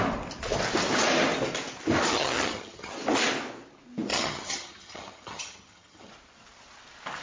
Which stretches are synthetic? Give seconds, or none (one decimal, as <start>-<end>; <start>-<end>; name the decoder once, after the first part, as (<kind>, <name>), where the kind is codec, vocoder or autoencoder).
2.1-2.9 (vocoder, HiFi-GAN); 4.1-6.1